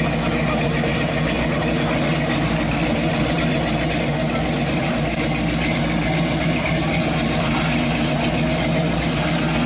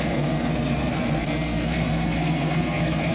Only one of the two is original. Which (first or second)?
first